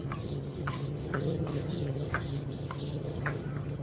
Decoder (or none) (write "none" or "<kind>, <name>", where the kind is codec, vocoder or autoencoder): vocoder, HiFi-GAN